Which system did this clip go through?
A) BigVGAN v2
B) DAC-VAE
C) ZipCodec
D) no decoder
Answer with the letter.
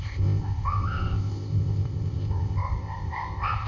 C